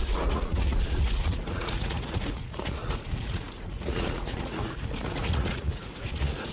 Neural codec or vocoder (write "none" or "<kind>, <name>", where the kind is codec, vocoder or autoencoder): vocoder, Vocos